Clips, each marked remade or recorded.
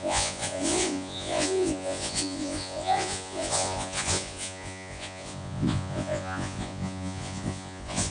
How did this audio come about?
remade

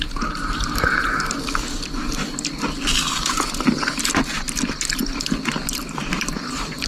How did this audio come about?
recorded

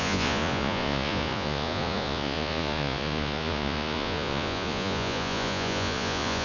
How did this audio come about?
remade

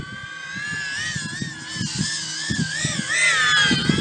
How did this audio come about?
recorded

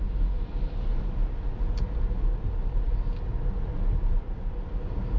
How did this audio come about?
recorded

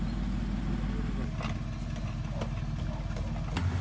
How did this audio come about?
recorded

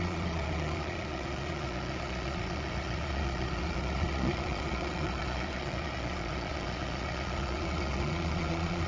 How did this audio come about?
remade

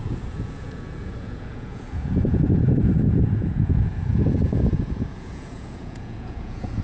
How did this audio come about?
remade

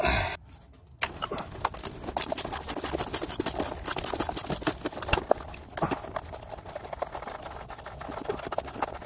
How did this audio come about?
recorded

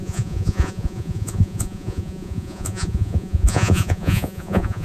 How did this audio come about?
remade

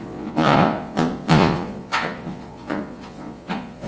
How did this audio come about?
remade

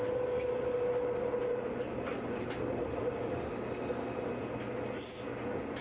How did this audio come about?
recorded